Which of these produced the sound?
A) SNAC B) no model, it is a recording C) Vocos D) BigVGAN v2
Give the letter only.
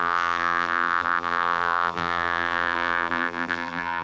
D